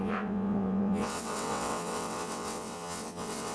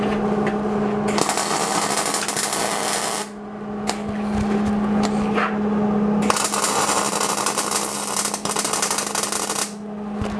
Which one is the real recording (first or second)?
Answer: second